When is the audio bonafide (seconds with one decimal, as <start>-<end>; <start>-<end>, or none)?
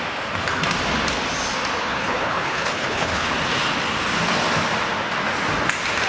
0.0-1.8; 3.3-6.1